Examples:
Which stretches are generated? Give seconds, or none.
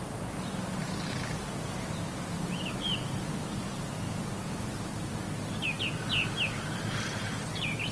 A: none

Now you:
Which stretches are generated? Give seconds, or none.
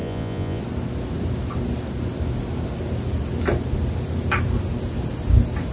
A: 0.0-0.6 (vocoder, Vocos)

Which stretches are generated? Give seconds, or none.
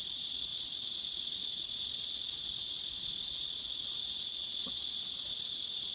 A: none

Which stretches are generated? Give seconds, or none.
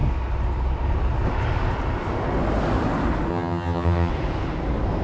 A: 3.3-4.1 (vocoder, HiFi-GAN)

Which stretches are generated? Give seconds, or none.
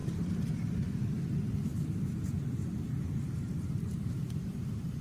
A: 0.0-1.0 (vocoder, BigVGAN v2); 1.7-5.0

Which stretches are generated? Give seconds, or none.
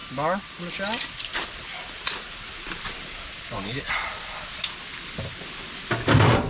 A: none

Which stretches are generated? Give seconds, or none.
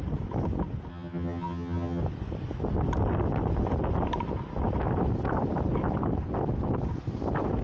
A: 0.9-2.0 (vocoder, HiFi-GAN)